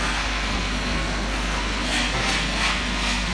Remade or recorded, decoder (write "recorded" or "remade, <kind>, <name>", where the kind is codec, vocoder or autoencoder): remade, codec, SNAC